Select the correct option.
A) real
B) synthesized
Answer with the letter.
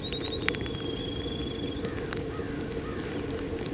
A